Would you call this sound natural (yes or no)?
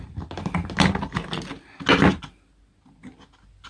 yes